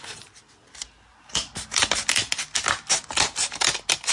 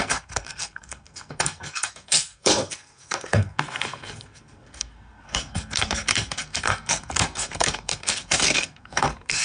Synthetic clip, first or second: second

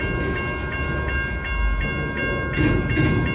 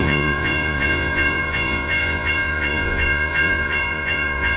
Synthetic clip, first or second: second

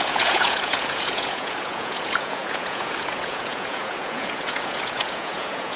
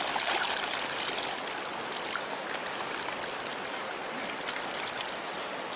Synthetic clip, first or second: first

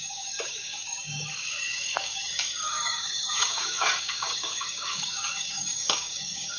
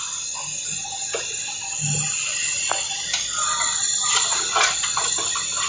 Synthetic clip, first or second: first